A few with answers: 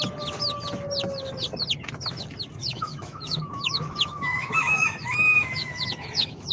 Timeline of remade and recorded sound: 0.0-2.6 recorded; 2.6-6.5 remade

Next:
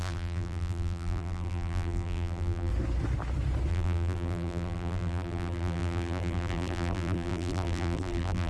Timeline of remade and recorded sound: 0.0-2.7 remade; 2.7-3.7 recorded; 3.7-8.5 remade

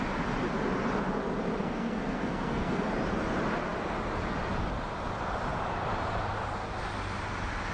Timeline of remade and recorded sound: 0.0-1.6 recorded; 1.6-2.9 remade; 2.9-7.7 recorded

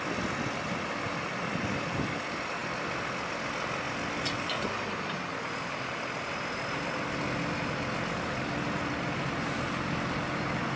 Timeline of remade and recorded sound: 0.0-10.8 recorded

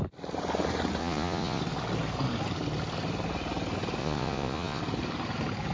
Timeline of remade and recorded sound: 0.0-1.0 recorded; 1.0-1.6 remade; 1.6-4.0 recorded; 4.0-4.8 remade; 4.8-5.7 recorded

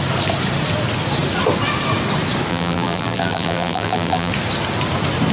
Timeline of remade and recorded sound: 0.0-2.5 recorded; 2.5-4.3 remade; 4.3-5.3 recorded

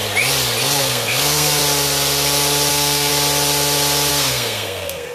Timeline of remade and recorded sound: 0.0-0.6 recorded; 0.6-1.6 remade; 1.6-2.7 recorded; 2.7-3.1 remade; 3.1-4.1 recorded; 4.1-5.1 remade

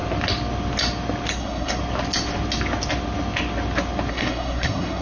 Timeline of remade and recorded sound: 0.0-1.3 recorded; 1.3-1.8 remade; 1.8-4.1 recorded; 4.1-5.0 remade